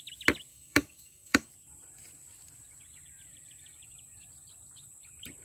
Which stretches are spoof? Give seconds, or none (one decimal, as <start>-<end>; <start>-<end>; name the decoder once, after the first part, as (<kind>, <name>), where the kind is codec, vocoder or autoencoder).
0.5-1.5 (codec, DAC)